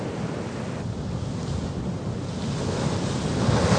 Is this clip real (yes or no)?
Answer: yes